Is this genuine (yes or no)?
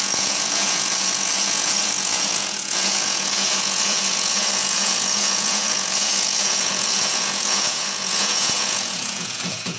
no